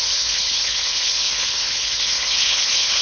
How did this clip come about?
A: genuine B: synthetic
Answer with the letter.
B